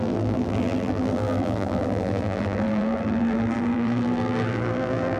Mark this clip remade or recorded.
remade